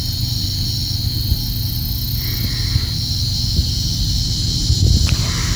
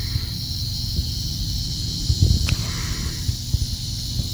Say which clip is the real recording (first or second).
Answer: first